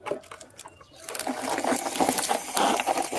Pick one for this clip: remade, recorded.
recorded